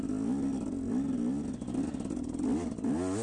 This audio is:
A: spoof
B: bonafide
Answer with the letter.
B